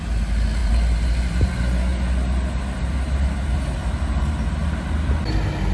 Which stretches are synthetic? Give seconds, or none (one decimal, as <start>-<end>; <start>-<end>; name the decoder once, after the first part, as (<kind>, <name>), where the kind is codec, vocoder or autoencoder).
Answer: 0.6-1.5 (vocoder, BigVGAN v2)